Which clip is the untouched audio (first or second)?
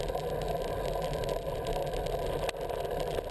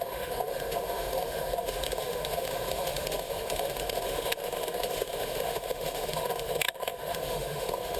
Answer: first